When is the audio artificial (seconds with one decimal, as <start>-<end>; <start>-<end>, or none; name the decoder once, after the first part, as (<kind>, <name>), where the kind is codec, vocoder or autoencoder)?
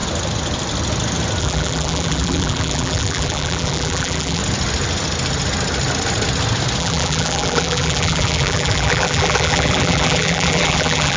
1.4-4.4 (vocoder, BigVGAN v2); 6.8-11.2